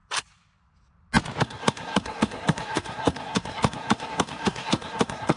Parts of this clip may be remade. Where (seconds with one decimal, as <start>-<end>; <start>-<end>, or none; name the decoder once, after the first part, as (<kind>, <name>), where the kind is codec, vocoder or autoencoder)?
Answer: 1.4-5.4 (codec, SNAC)

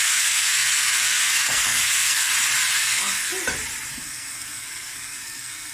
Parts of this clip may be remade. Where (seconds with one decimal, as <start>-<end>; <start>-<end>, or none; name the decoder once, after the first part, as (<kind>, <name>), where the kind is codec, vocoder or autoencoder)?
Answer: 0.0-2.3 (codec, SNAC); 2.8-3.3; 3.9-5.7

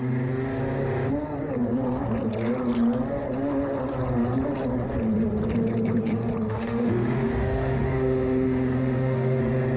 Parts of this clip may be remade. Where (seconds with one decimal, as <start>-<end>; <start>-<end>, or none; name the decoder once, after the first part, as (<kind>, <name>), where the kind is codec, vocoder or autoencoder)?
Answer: 6.5-9.4 (autoencoder, DAC-VAE)

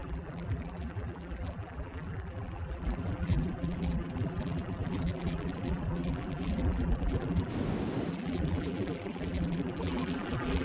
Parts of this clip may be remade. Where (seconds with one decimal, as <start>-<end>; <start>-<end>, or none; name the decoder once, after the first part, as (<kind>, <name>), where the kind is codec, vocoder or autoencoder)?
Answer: 0.0-7.5 (vocoder, BigVGAN v2); 8.1-10.6

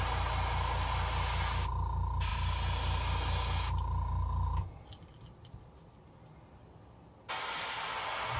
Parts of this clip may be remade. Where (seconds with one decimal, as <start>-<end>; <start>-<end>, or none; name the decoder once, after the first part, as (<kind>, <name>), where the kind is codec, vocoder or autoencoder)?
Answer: none

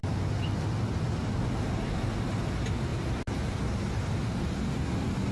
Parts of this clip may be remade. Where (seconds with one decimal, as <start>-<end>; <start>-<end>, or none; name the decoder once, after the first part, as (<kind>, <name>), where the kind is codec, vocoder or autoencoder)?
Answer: none